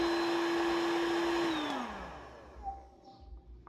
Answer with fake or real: real